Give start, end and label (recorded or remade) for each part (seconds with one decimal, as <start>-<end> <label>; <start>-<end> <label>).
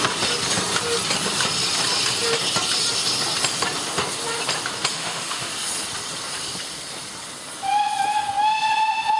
0.0-4.9 recorded; 4.9-5.5 remade; 5.5-9.2 recorded